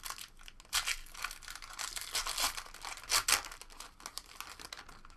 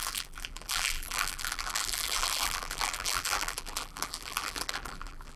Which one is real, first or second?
first